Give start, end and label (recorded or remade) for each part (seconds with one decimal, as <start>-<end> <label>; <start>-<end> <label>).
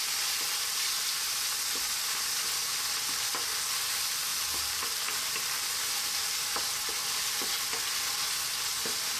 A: 0.0-4.3 recorded; 4.3-5.3 remade; 5.3-9.2 recorded